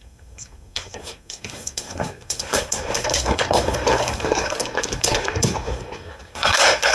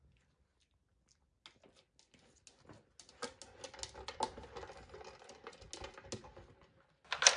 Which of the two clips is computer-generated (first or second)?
first